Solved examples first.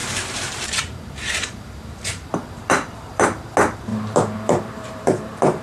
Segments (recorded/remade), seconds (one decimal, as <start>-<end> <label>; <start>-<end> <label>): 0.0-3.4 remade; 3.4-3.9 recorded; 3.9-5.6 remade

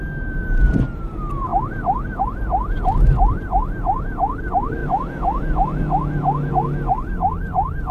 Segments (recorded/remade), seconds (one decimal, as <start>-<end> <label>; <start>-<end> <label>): 0.0-1.5 remade; 1.5-2.2 recorded; 2.2-4.8 remade; 4.8-6.5 recorded; 6.5-7.9 remade

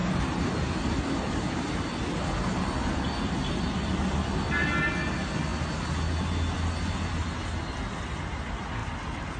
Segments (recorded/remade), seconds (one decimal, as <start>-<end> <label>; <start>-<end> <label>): 0.0-3.6 remade; 3.6-9.4 recorded

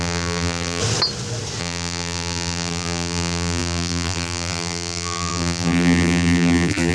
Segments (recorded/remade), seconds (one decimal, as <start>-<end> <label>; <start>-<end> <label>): 0.0-0.8 remade; 0.8-1.6 recorded; 1.6-6.9 remade